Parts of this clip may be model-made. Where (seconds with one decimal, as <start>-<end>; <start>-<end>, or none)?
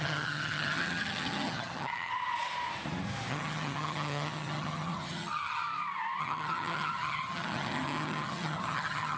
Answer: 0.0-2.1; 3.3-5.6; 6.2-9.2